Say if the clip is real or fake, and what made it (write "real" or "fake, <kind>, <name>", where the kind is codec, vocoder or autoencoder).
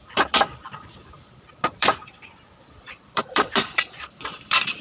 fake, vocoder, BigVGAN v2